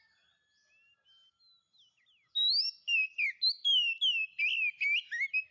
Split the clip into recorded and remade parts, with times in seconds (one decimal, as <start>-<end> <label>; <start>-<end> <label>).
0.0-5.5 recorded